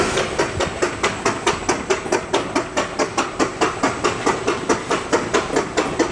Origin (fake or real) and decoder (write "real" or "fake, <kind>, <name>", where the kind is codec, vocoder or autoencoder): real